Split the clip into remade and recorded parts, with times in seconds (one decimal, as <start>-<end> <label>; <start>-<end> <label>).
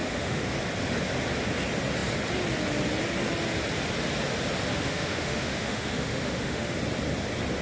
0.0-0.6 remade; 0.6-4.7 recorded; 4.7-6.8 remade; 6.8-7.6 recorded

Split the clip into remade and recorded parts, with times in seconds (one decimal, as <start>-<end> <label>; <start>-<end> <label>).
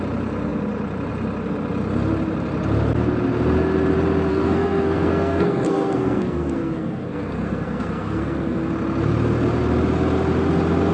0.0-4.3 recorded; 4.3-8.7 remade; 8.7-10.9 recorded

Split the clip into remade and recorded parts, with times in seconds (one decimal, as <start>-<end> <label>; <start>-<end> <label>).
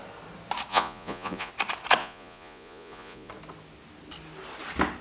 0.0-0.7 recorded; 0.7-1.5 remade; 1.5-2.0 recorded; 2.0-3.3 remade; 3.3-5.0 recorded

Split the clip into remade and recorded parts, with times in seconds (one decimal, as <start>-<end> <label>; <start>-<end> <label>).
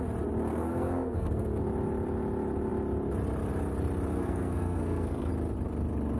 0.0-0.5 recorded; 0.5-1.5 remade; 1.5-4.1 recorded; 4.1-5.3 remade; 5.3-6.2 recorded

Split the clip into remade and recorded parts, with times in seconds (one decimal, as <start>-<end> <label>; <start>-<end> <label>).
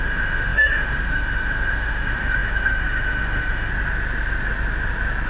0.0-3.7 remade; 3.7-5.3 recorded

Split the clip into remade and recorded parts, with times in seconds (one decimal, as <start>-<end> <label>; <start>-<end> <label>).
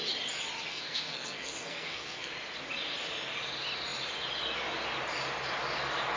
0.0-0.7 recorded; 0.7-2.3 remade; 2.3-6.2 recorded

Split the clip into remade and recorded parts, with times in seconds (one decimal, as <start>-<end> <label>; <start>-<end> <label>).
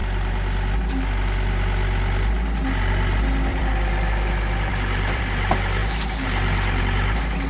0.0-3.5 recorded; 3.5-5.2 remade; 5.2-7.5 recorded